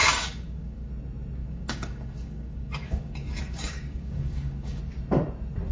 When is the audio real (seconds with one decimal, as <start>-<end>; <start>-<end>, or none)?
0.9-1.4; 4.8-5.7